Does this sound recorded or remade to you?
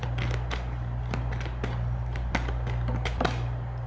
recorded